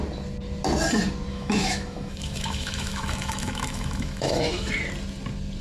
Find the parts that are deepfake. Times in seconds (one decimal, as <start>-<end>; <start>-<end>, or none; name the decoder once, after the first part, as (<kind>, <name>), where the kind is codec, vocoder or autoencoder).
1.3-4.7 (autoencoder, DAC-VAE)